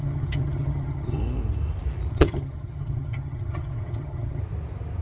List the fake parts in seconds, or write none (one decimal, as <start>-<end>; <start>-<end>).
0.0-1.2; 2.1-4.4